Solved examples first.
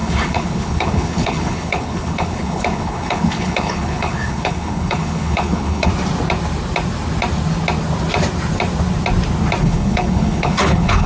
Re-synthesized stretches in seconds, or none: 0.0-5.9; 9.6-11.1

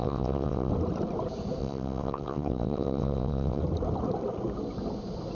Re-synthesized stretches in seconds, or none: 0.0-0.7; 1.6-3.6

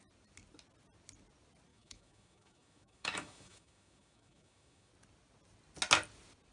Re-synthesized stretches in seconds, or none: 1.7-4.9

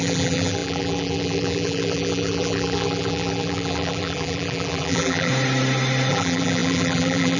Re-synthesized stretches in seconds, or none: 0.0-5.3; 6.1-7.4

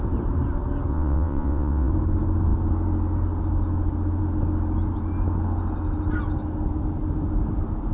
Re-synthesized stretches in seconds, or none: 0.9-1.9

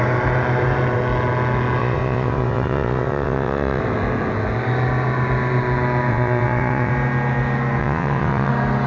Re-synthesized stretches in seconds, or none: 1.8-3.8; 6.1-6.9; 7.8-8.5

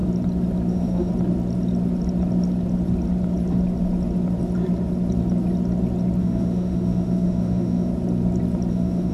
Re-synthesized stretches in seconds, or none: 0.7-1.1; 6.2-7.9; 8.7-9.1